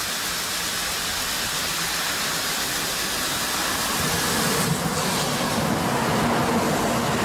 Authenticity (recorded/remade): recorded